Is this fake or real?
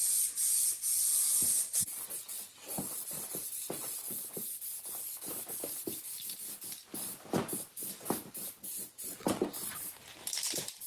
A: real